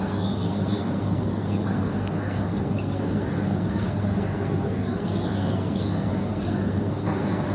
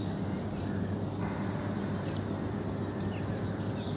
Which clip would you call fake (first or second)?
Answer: first